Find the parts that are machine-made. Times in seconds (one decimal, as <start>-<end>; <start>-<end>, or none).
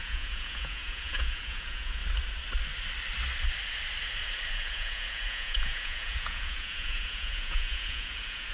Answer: 0.0-2.0; 4.5-8.5